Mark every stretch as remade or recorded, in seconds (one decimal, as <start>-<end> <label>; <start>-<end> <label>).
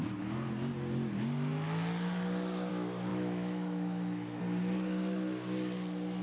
0.0-3.1 recorded; 3.1-4.4 remade; 4.4-6.2 recorded